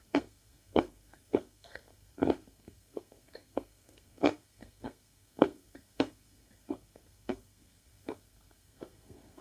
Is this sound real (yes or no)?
no